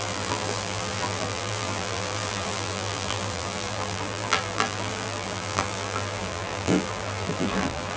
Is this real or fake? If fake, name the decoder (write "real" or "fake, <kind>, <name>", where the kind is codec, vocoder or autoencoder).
fake, vocoder, BigVGAN v2